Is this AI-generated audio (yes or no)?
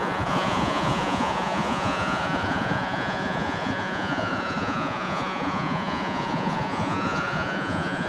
yes